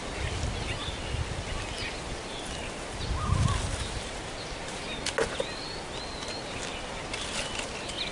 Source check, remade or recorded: recorded